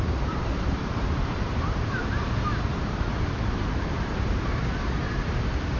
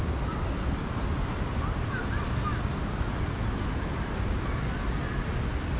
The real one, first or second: second